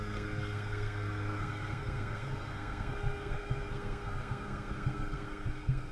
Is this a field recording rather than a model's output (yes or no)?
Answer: no